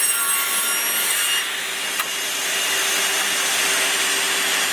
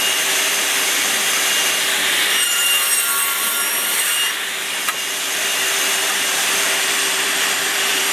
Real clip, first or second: first